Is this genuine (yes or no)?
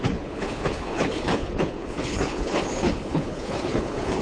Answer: no